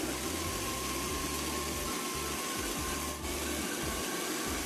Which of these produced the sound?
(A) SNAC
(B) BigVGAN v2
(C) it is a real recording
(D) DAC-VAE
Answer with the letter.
C